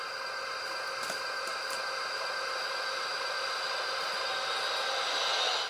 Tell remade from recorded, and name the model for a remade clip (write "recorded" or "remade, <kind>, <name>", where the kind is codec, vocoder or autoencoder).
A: recorded